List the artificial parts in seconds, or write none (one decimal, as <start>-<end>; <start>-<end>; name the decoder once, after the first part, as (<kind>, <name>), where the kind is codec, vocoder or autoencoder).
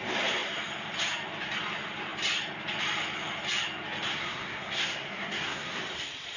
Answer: 4.1-5.8 (codec, SNAC)